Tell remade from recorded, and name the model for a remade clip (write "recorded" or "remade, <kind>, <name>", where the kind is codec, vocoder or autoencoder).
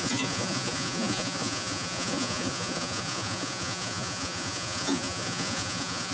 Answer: remade, vocoder, Vocos